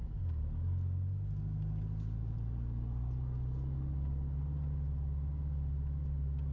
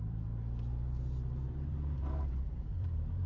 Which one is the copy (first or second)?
second